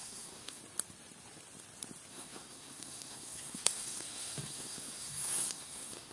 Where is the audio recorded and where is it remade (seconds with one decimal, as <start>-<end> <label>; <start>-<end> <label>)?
0.0-0.6 remade; 0.6-2.1 recorded; 2.1-6.1 remade